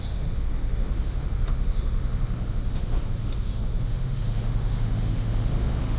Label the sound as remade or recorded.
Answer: remade